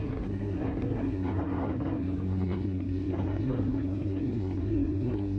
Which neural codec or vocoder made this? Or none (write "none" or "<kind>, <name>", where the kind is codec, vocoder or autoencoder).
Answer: codec, SNAC